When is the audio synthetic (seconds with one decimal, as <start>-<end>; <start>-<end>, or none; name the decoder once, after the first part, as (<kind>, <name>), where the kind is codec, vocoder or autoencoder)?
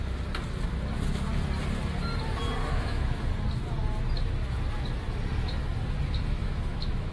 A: 2.6-3.3 (autoencoder, DAC-VAE); 6.4-7.1